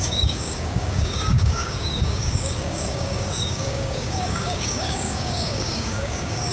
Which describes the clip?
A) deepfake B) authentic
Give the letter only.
A